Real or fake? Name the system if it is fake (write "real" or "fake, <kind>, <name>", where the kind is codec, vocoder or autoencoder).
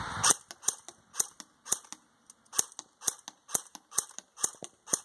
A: real